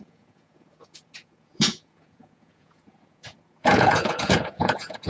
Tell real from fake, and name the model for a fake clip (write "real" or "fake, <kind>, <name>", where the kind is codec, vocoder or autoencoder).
fake, vocoder, Vocos